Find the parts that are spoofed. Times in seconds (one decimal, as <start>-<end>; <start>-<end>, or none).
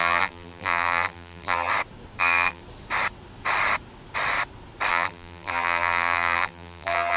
0.0-1.7; 2.2-2.6; 4.9-7.2